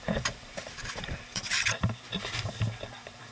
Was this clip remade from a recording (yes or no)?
yes